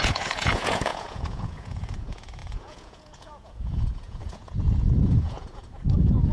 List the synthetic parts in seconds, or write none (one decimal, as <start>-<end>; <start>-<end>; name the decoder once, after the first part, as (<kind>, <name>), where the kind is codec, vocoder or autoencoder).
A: 0.0-6.3 (vocoder, Vocos)